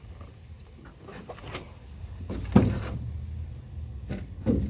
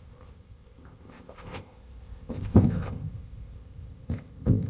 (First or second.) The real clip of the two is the first